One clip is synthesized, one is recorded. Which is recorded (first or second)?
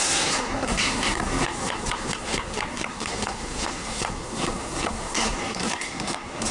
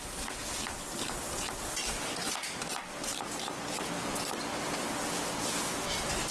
second